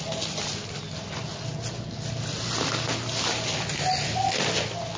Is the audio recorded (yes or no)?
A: yes